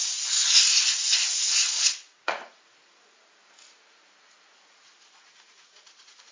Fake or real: fake